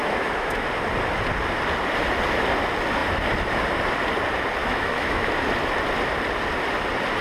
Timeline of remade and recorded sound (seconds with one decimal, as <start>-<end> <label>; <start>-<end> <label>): 0.0-0.7 remade; 0.7-4.6 recorded; 4.6-5.3 remade; 5.3-7.2 recorded